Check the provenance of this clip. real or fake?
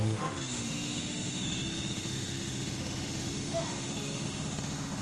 fake